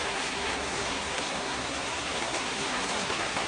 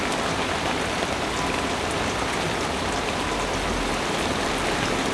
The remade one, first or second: first